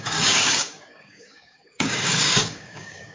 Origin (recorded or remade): remade